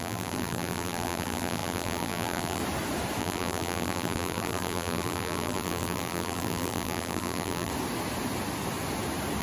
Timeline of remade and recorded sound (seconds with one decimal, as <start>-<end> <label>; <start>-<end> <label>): 0.0-2.6 remade; 2.6-3.2 recorded; 3.2-7.7 remade; 7.7-9.4 recorded